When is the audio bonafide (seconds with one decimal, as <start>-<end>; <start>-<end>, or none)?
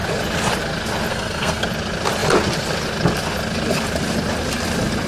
0.0-1.1; 1.6-5.1